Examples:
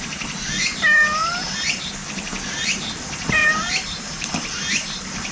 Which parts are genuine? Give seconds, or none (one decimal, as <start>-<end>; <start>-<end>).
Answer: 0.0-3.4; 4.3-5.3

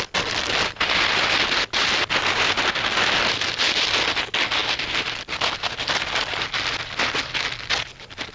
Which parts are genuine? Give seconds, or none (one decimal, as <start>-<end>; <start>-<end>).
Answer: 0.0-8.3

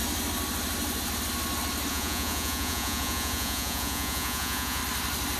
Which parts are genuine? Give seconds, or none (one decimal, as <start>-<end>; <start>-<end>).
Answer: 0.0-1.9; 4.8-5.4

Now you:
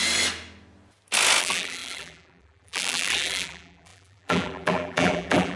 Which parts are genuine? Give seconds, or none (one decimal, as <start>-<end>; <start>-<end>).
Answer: 0.0-1.4

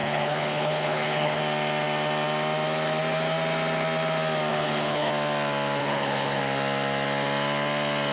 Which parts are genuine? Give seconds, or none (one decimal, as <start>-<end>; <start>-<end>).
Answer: 1.4-4.5; 5.1-5.8; 6.4-8.1

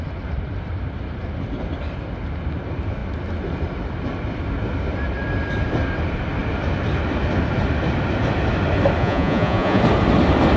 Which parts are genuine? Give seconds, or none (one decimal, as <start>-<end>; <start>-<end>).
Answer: 0.0-9.0; 9.8-10.6

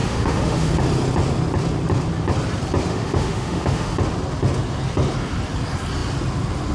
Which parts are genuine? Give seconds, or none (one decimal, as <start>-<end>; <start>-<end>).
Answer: 0.7-2.9; 3.9-6.7

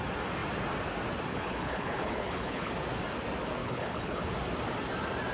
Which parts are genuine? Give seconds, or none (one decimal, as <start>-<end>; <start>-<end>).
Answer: 0.0-1.3; 2.7-3.6; 4.3-5.3